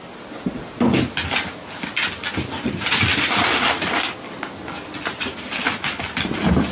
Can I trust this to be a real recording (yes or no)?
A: yes